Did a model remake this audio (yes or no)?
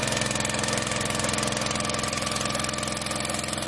no